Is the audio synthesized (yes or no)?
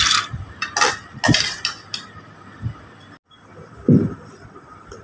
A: no